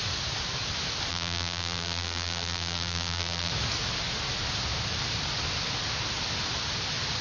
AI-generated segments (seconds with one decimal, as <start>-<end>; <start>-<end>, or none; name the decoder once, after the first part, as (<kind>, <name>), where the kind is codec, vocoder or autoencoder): 1.1-3.5 (vocoder, BigVGAN v2)